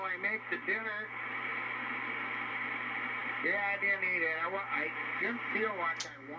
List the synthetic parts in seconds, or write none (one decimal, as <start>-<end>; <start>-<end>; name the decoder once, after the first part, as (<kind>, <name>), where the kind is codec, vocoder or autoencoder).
none